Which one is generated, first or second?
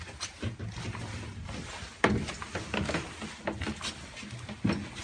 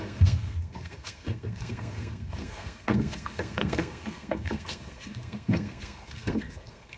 second